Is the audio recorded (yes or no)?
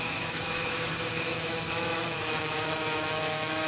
no